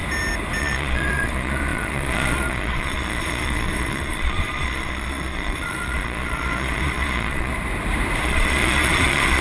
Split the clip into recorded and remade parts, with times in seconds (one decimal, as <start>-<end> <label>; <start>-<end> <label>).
0.0-0.6 recorded; 0.6-7.5 remade; 7.5-8.2 recorded; 8.2-9.4 remade